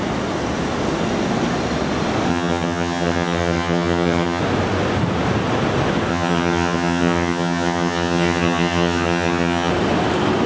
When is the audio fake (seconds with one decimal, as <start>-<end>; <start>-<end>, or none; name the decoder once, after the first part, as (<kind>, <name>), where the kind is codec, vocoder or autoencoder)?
2.3-4.4 (vocoder, HiFi-GAN); 6.1-9.7